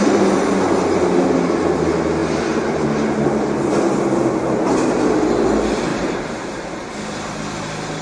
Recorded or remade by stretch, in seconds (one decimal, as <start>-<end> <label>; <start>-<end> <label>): 0.0-5.9 recorded; 5.9-7.4 remade; 7.4-8.0 recorded